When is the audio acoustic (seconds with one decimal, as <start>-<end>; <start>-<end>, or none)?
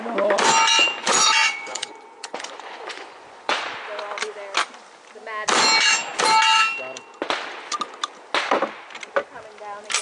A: 0.0-1.0; 3.7-10.0